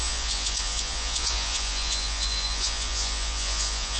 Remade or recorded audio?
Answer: remade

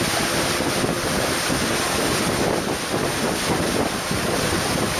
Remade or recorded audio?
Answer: recorded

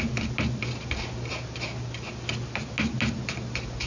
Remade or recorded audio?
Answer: recorded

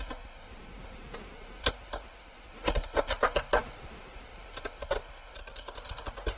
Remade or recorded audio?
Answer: recorded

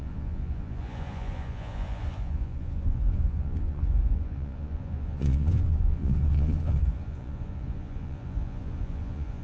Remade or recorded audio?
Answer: remade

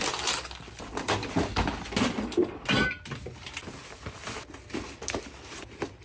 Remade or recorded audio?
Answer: recorded